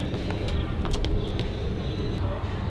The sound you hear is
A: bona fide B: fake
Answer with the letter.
A